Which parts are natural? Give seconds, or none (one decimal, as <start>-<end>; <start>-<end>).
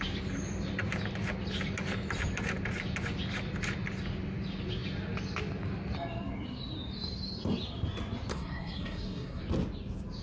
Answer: 0.0-8.3; 9.4-10.2